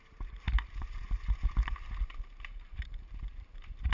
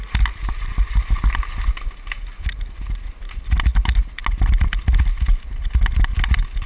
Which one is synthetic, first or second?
first